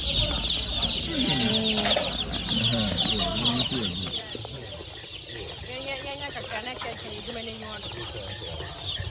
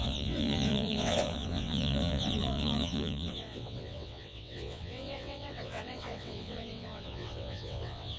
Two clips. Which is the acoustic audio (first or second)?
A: first